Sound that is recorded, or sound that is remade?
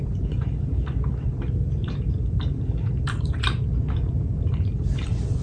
remade